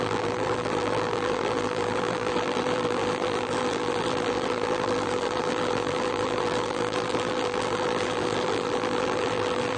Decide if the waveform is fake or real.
fake